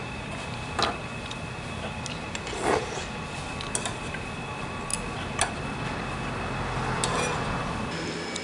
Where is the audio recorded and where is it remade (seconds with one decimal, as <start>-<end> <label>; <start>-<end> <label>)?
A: 0.0-8.4 recorded